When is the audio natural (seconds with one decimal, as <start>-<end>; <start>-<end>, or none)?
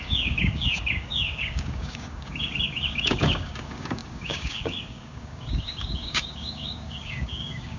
none